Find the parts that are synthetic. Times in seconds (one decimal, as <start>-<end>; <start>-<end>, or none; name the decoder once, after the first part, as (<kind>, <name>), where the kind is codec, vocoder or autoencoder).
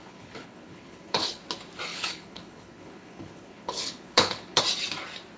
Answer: 0.0-1.4 (codec, HILCodec); 1.9-4.6